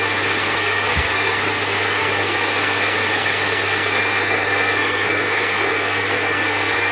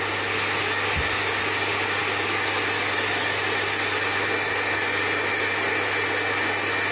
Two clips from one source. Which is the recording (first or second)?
second